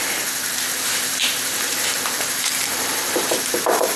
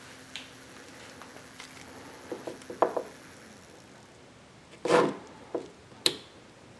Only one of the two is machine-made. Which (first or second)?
first